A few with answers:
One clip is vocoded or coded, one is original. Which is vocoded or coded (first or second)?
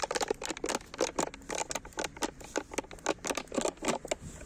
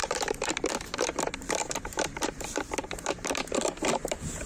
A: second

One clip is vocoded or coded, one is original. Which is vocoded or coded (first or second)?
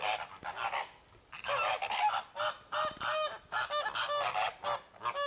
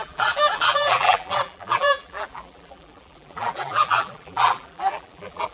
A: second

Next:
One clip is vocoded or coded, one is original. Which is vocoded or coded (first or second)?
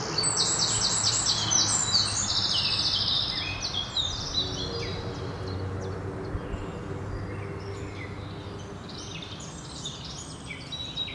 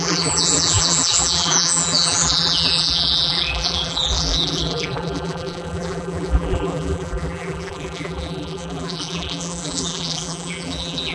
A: second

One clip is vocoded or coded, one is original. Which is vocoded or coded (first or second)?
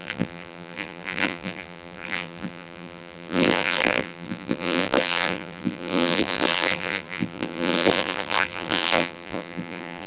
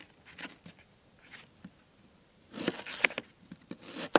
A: first